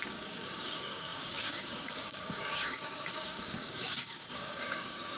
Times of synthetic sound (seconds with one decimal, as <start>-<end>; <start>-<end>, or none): 0.0-5.2